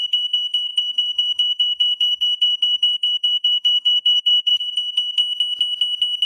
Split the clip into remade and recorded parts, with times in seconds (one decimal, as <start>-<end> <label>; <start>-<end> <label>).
0.0-5.2 remade; 5.2-6.3 recorded